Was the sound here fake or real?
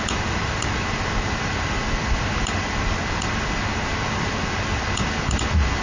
real